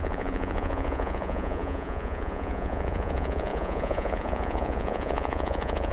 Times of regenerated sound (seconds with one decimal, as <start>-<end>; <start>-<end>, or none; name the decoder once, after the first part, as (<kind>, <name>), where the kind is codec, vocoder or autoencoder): 0.0-5.9 (vocoder, Vocos)